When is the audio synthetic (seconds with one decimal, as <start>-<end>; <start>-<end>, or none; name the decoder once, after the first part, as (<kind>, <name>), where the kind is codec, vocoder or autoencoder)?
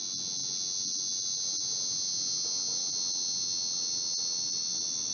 none